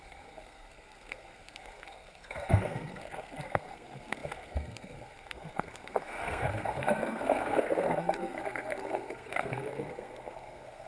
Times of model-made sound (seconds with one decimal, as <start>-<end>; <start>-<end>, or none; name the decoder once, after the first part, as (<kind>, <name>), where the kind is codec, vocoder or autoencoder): 0.0-10.9 (codec, SNAC)